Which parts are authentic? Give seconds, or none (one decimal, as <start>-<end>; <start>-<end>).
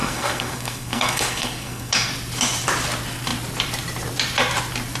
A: 2.1-5.0